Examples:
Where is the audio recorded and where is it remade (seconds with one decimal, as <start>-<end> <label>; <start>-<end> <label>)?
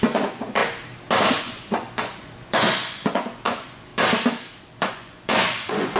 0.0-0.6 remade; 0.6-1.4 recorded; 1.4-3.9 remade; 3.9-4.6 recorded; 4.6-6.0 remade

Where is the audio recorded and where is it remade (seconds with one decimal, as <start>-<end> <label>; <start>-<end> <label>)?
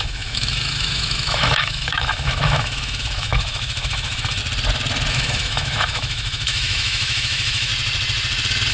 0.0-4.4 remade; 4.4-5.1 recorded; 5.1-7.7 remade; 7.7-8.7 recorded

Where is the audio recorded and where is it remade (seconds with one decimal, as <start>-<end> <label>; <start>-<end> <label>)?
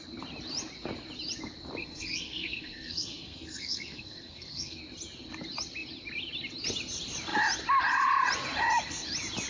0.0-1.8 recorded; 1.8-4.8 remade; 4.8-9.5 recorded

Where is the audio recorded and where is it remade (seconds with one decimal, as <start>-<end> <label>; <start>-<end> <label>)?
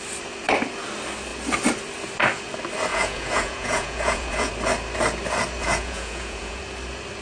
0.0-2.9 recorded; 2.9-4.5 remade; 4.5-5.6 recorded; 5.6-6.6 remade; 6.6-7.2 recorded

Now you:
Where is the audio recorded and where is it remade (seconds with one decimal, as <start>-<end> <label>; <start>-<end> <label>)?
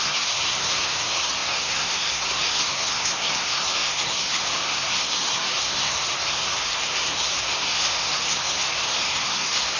0.0-9.8 remade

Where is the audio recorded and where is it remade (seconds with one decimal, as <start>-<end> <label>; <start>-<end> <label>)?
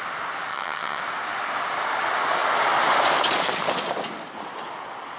0.0-0.5 recorded; 0.5-1.0 remade; 1.0-5.2 recorded